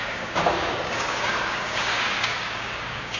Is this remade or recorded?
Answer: remade